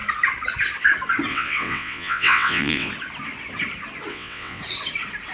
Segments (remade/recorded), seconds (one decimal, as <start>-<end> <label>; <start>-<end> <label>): 0.0-1.3 recorded; 1.3-2.9 remade; 2.9-4.1 recorded; 4.1-4.6 remade; 4.6-5.3 recorded